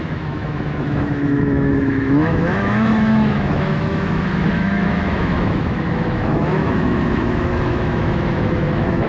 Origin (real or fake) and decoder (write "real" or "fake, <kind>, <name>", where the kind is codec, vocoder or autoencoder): fake, autoencoder, DAC-VAE